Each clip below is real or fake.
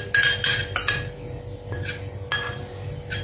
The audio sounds real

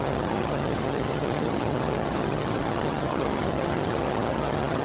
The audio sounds fake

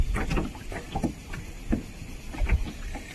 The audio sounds real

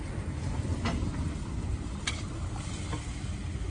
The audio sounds real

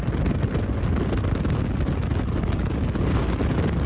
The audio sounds real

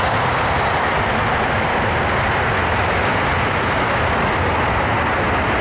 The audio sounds real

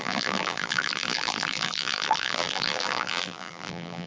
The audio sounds fake